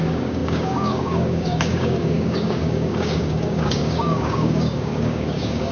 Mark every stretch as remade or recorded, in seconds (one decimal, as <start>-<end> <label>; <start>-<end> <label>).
0.0-5.7 remade